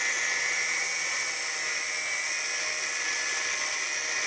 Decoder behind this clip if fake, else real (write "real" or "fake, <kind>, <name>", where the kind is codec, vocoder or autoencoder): real